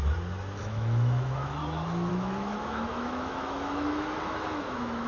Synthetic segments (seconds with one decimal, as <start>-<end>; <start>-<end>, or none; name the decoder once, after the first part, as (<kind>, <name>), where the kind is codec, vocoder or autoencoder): 0.6-1.6 (autoencoder, DAC-VAE); 2.1-5.1